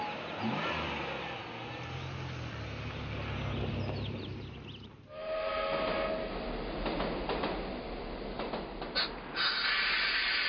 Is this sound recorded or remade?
recorded